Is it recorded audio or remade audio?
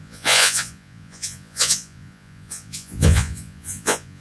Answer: remade